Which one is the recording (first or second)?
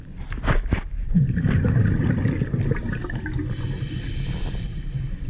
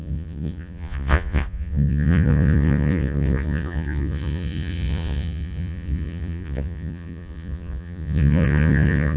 first